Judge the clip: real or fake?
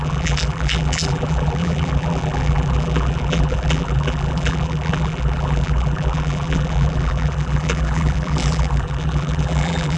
fake